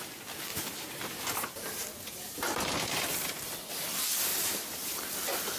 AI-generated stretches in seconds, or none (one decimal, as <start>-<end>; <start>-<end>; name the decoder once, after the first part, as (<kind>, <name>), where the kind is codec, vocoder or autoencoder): 0.5-3.0 (vocoder, BigVGAN v2); 4.3-5.0